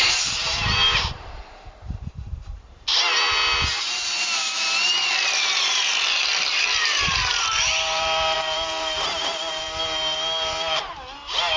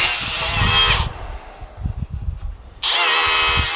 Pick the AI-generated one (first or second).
first